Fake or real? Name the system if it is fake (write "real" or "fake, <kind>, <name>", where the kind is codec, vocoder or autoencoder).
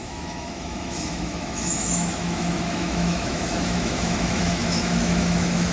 fake, autoencoder, DAC-VAE